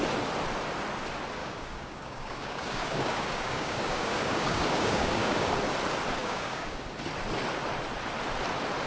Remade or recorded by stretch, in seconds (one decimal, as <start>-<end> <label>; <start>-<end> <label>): 0.0-1.4 recorded; 1.4-5.5 remade; 5.5-6.2 recorded; 6.2-6.9 remade; 6.9-8.9 recorded